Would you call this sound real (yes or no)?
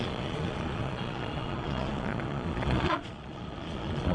no